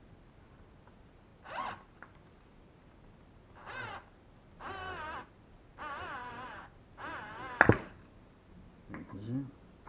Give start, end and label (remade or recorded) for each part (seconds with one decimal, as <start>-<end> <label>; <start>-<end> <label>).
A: 0.0-9.9 recorded